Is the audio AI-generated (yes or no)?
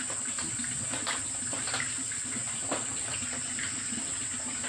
no